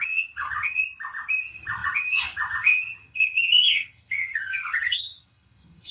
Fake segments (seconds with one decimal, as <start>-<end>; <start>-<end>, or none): 0.0-0.8; 1.4-5.9